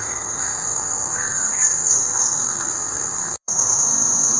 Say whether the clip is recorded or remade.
remade